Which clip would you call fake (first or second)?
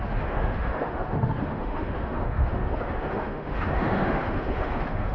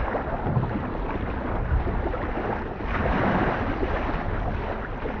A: first